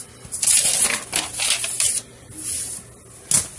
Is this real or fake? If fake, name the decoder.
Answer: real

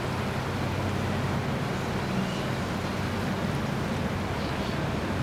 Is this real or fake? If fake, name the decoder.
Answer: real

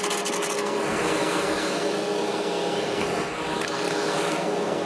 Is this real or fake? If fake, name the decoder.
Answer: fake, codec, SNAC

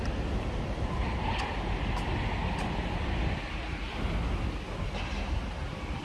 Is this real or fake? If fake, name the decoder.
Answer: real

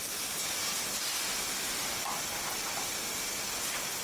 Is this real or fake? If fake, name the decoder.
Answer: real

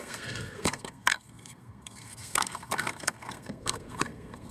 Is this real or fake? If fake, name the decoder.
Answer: fake, codec, SNAC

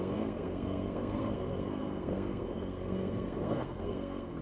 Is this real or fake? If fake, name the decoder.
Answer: fake, codec, SNAC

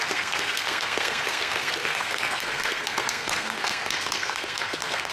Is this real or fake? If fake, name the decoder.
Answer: fake, codec, SNAC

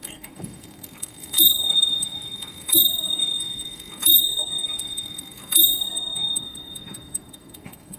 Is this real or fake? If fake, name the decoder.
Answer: fake, codec, SNAC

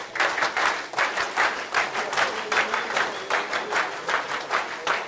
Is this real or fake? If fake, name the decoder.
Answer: real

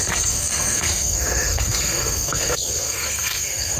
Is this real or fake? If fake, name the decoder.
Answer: fake, codec, SNAC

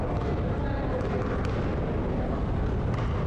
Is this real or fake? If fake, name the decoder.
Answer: real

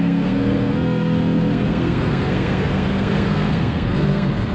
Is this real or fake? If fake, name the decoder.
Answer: fake, codec, SNAC